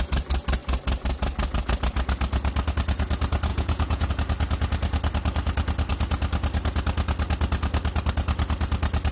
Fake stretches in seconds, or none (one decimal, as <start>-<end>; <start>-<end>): 3.5-4.1